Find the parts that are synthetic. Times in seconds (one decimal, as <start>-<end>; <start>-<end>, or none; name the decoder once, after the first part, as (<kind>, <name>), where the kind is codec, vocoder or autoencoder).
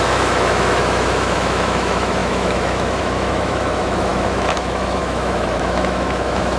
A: 0.0-6.6 (autoencoder, DAC-VAE)